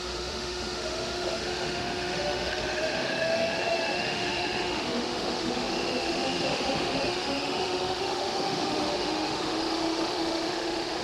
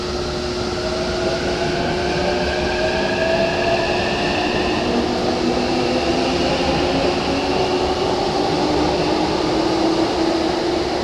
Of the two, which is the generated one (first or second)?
first